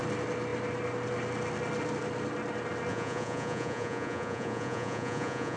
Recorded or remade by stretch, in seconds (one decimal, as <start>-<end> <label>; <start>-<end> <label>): 0.0-2.9 recorded; 2.9-5.6 remade